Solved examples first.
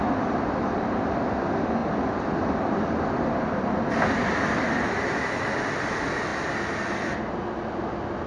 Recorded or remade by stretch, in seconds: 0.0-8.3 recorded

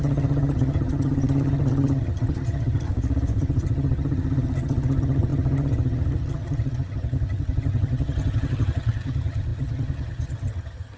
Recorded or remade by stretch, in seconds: 0.0-2.9 remade; 2.9-3.4 recorded; 3.4-11.0 remade

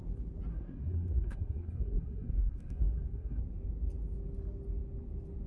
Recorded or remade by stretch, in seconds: 0.0-0.5 recorded; 0.5-3.4 remade; 3.4-5.5 recorded

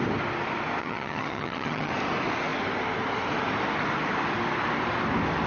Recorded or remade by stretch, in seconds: 0.0-0.8 recorded; 0.8-1.9 remade; 1.9-5.5 recorded

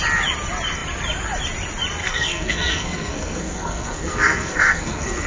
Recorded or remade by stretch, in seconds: 0.0-2.0 recorded; 2.0-5.3 remade

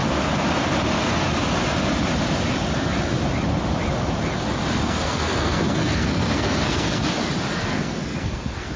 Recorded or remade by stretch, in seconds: 0.0-4.8 recorded; 4.8-7.0 remade; 7.0-7.6 recorded; 7.6-8.8 remade